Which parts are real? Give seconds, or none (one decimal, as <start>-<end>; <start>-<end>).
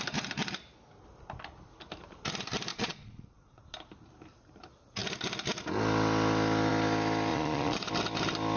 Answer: 0.0-2.7; 3.6-7.3; 7.9-8.6